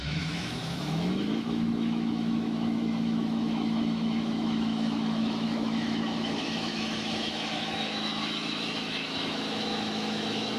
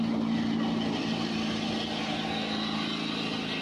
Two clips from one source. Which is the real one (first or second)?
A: second